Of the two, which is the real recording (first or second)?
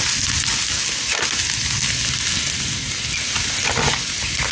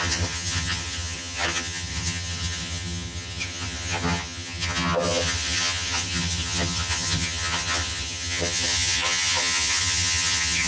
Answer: first